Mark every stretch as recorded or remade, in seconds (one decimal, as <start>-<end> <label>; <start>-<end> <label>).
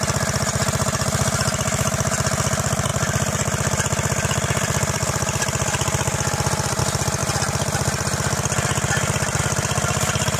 0.0-2.9 recorded; 2.9-6.8 remade; 6.8-7.2 recorded; 7.2-9.4 remade; 9.4-10.4 recorded